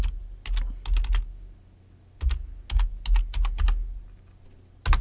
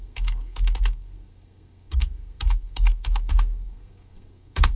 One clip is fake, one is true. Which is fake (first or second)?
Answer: second